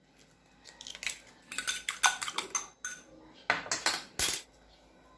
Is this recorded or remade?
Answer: recorded